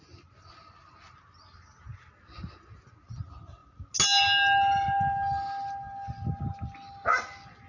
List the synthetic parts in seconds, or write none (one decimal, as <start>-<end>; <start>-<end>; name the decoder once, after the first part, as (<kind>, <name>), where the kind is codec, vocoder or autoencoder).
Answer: none

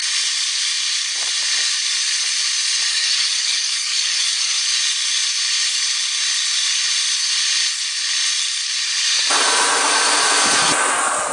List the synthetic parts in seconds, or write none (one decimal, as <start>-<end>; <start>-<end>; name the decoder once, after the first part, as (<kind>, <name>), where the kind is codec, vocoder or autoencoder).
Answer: 2.9-4.6 (codec, DAC)

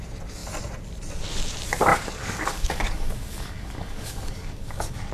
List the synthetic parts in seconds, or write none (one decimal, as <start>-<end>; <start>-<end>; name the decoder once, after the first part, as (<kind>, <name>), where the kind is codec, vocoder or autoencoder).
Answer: 1.9-5.1 (codec, DAC)

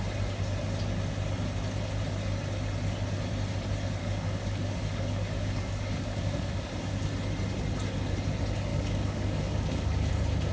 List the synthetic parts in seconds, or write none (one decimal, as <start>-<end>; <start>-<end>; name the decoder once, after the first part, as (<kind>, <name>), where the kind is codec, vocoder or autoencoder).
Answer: 4.0-6.7 (codec, DAC); 8.7-10.1

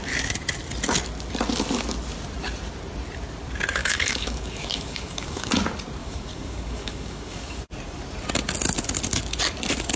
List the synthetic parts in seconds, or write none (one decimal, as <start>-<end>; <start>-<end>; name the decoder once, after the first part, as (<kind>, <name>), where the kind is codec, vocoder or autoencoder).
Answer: 3.8-5.5 (codec, DAC); 6.0-7.6

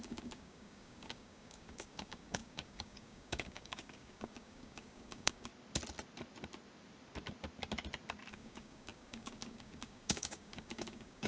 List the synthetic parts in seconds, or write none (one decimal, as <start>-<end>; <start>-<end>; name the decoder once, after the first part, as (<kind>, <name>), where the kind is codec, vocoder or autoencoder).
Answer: 0.0-5.5 (codec, DAC); 8.3-11.3

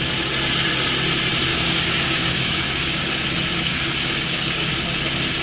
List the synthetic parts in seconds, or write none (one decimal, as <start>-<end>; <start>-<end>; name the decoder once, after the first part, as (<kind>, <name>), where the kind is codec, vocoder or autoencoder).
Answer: 1.5-3.0 (codec, DAC); 3.7-4.7

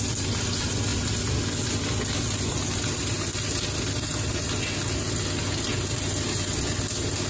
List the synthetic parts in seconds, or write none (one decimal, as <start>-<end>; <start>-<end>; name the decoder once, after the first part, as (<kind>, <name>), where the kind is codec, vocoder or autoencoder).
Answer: none